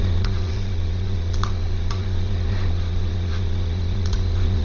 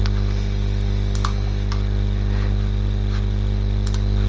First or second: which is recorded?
second